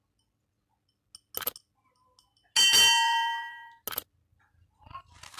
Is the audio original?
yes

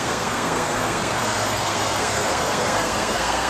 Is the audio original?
no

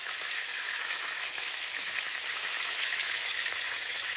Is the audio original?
no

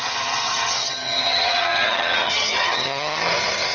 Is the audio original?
no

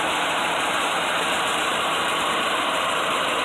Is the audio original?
no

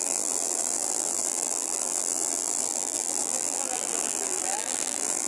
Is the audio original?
no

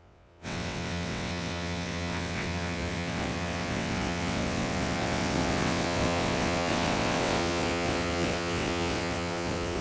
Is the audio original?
no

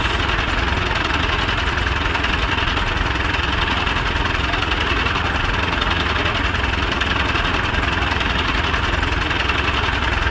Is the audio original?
no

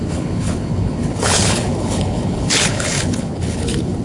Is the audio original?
no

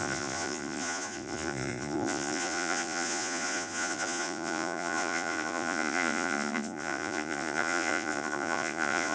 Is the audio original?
no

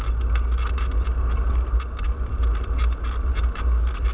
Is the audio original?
yes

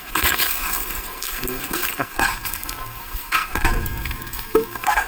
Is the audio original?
no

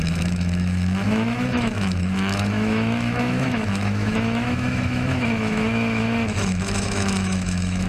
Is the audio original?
no